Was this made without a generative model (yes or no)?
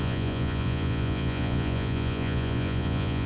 no